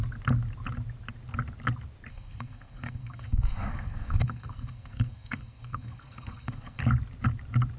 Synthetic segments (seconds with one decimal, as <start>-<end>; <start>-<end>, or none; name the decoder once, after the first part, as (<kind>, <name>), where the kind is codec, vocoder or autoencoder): 2.1-6.8 (codec, SNAC)